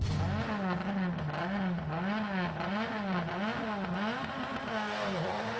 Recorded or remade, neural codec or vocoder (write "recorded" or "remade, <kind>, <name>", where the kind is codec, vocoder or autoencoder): recorded